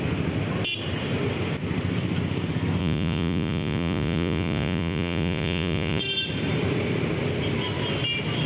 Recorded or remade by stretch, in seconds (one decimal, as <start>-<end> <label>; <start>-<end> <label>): 0.0-2.8 recorded; 2.8-6.0 remade; 6.0-8.5 recorded